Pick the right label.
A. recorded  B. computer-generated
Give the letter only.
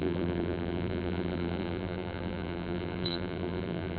B